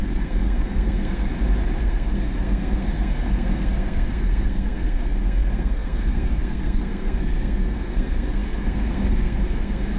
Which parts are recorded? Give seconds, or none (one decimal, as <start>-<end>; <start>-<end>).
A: 1.3-1.8